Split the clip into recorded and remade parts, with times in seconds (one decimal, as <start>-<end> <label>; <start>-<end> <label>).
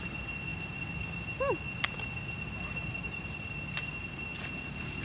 0.0-5.0 recorded